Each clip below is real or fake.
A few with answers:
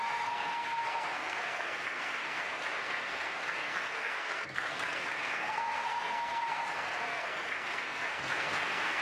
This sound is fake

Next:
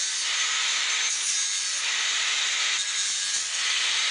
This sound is real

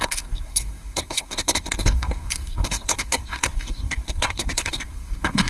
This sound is fake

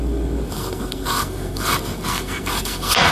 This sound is fake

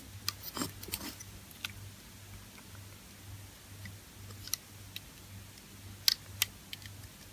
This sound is real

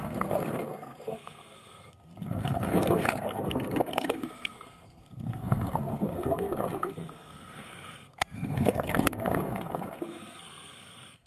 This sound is fake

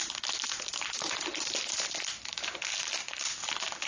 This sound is real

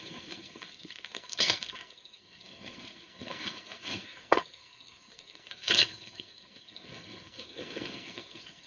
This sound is fake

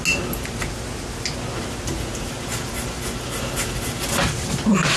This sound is real